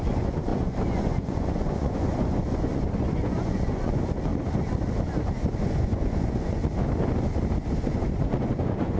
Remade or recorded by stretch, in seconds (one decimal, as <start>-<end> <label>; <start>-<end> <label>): 0.0-4.3 remade; 4.3-5.6 recorded; 5.6-6.6 remade; 6.6-7.8 recorded; 7.8-9.0 remade